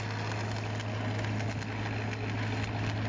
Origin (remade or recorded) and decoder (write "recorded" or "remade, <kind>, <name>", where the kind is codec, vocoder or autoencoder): recorded